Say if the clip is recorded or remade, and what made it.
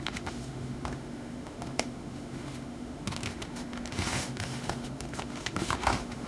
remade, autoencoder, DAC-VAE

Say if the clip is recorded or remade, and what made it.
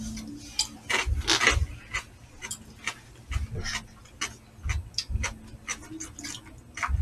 recorded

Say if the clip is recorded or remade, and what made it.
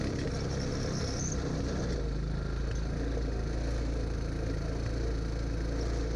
recorded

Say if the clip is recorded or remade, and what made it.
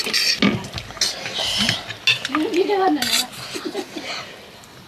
recorded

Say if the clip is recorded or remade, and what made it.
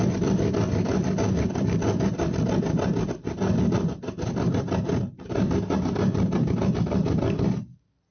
recorded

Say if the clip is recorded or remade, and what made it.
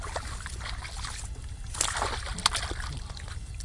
recorded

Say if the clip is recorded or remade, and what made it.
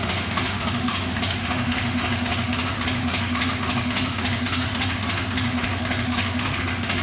remade, autoencoder, DAC-VAE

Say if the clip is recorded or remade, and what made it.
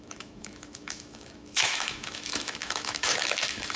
remade, autoencoder, DAC-VAE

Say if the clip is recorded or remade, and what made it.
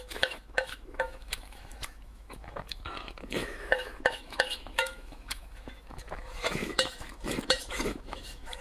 remade, autoencoder, DAC-VAE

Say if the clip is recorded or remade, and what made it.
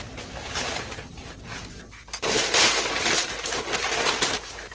recorded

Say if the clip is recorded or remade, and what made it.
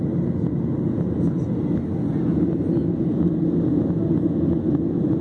recorded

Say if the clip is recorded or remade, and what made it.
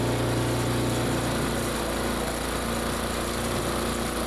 recorded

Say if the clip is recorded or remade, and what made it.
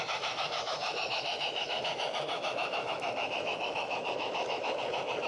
remade, autoencoder, DAC-VAE